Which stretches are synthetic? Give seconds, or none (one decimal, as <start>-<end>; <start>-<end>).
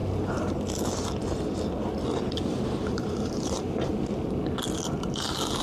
0.0-0.5; 2.5-3.9